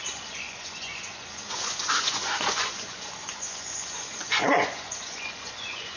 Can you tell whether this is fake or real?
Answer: fake